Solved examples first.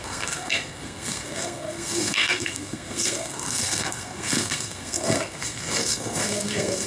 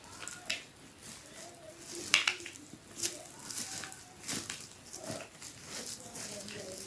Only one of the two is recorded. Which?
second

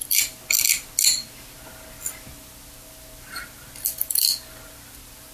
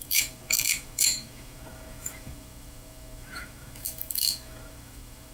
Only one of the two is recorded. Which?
first